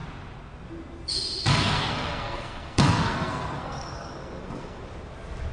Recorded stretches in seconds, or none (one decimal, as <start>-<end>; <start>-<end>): 0.0-1.5; 4.8-5.5